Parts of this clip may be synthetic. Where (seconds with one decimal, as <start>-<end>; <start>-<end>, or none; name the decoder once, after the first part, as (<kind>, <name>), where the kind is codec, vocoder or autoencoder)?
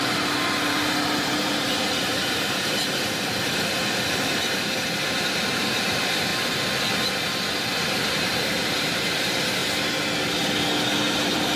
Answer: 0.0-6.3 (vocoder, BigVGAN v2); 7.9-9.6; 11.1-11.6